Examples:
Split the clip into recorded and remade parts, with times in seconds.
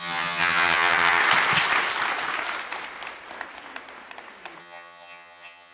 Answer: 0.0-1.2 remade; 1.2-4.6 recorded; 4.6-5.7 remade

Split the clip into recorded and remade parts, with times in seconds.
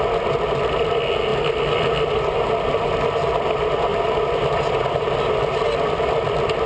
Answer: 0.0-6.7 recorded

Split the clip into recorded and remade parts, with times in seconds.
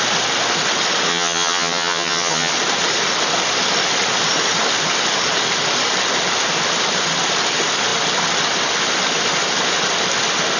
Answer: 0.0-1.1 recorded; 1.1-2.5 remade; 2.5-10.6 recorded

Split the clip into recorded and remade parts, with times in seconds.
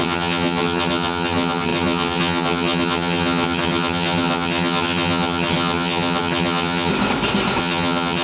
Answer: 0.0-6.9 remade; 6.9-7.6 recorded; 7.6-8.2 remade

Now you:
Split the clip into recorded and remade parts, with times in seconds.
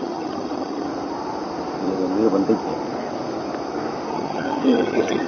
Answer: 0.0-0.9 remade; 0.9-4.1 recorded; 4.1-5.3 remade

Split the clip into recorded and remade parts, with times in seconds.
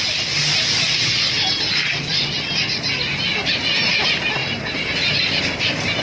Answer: 0.0-6.0 recorded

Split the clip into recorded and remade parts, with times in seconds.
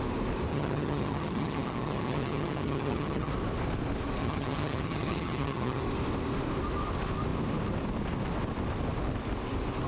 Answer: 0.0-0.5 recorded; 0.5-3.3 remade; 3.3-4.2 recorded; 4.2-5.8 remade; 5.8-9.9 recorded